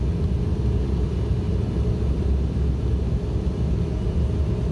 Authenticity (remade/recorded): recorded